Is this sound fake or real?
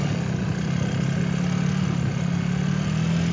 real